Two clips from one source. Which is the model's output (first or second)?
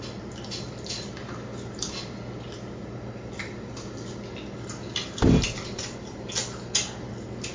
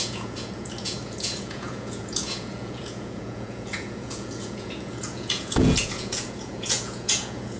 second